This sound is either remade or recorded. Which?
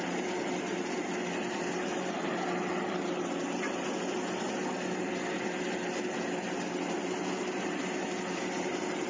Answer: recorded